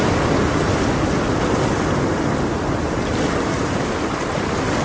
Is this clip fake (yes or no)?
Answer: no